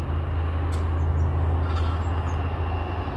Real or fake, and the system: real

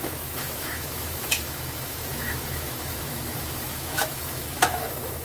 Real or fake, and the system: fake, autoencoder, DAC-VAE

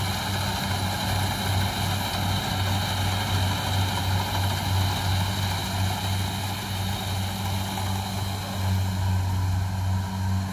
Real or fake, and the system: real